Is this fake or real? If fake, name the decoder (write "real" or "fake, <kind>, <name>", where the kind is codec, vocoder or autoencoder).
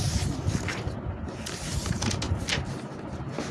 real